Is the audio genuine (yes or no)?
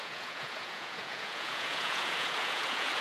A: no